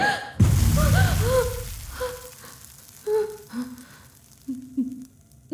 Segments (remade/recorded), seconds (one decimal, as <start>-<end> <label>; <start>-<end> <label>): 0.0-5.5 recorded